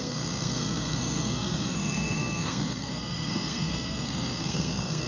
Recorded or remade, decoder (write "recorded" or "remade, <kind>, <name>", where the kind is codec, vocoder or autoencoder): remade, codec, SNAC